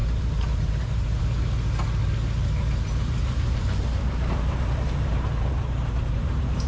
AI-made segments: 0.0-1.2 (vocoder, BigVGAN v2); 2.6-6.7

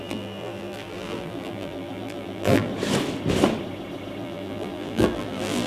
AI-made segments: 0.0-2.7 (vocoder, BigVGAN v2); 4.2-5.7

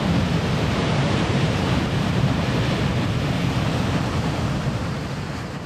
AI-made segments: 0.8-2.9 (vocoder, BigVGAN v2)

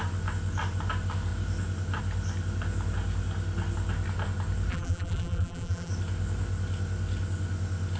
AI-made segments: 4.7-5.9 (vocoder, BigVGAN v2)

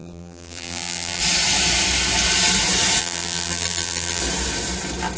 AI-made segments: 0.0-1.2 (vocoder, BigVGAN v2); 3.0-4.2

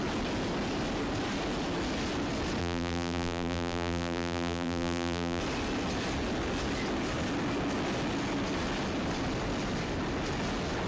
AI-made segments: 2.6-5.4 (vocoder, BigVGAN v2)

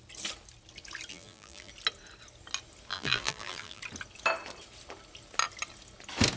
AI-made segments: 1.1-1.7 (vocoder, BigVGAN v2); 2.9-3.8

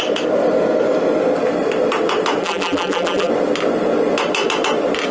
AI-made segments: 2.4-3.3 (vocoder, BigVGAN v2)